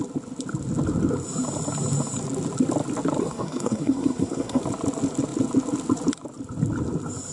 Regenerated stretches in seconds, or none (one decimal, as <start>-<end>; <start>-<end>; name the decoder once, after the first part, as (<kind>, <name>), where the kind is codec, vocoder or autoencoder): 3.2-4.6 (codec, SNAC)